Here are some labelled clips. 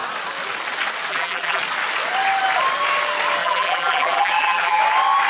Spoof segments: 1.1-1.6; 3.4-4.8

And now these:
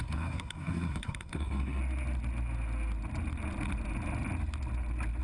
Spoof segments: 0.0-1.8

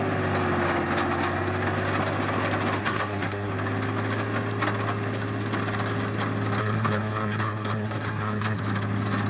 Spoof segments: 2.8-3.5; 6.6-8.6

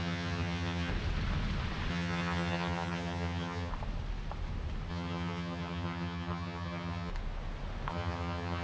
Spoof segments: 0.0-0.9; 1.9-3.7; 4.9-7.1; 7.9-8.6

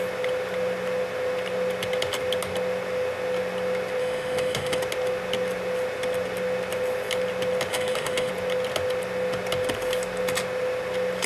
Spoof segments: 4.0-4.8; 7.7-8.3

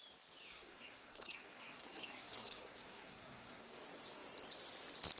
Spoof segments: 0.5-3.6

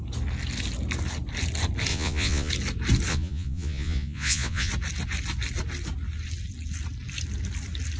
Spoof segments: 1.9-2.5; 3.1-4.7